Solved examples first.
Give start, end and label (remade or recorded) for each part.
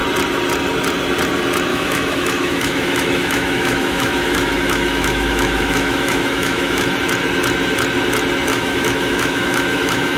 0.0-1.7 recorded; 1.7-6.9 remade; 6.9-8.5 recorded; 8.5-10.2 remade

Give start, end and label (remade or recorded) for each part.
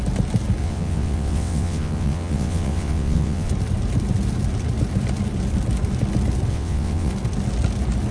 0.0-0.6 recorded; 0.6-3.5 remade; 3.5-6.5 recorded; 6.5-7.1 remade; 7.1-8.1 recorded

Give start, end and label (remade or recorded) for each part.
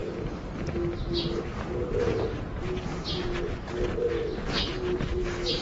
0.0-5.6 recorded